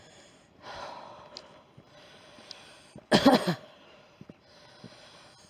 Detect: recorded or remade recorded